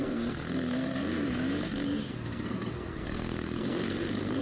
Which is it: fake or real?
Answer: fake